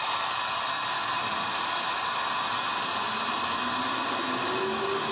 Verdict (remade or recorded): recorded